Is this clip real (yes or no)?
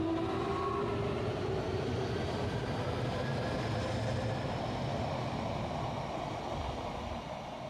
yes